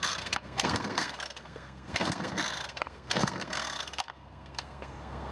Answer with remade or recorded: remade